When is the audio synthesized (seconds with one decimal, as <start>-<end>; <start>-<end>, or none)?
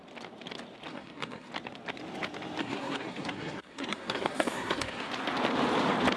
0.9-1.5; 2.6-5.1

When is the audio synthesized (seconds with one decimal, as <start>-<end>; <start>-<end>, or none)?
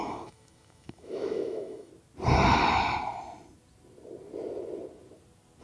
0.0-1.9